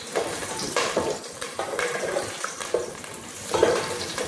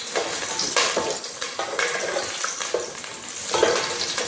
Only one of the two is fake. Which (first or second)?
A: first